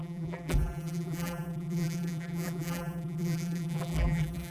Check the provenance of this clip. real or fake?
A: fake